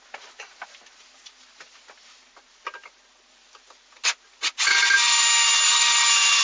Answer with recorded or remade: recorded